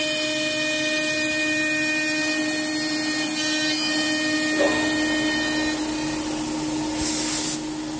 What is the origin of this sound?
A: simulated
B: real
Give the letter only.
B